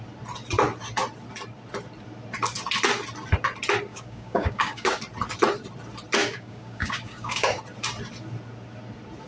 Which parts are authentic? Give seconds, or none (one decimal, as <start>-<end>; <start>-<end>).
0.0-3.9; 5.0-6.2; 7.6-9.3